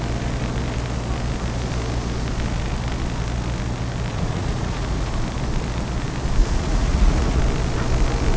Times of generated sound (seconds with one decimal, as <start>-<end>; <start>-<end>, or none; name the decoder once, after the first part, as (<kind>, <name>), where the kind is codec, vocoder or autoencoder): 4.1-5.1 (vocoder, Vocos); 6.4-7.4